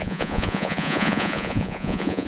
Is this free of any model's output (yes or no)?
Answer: no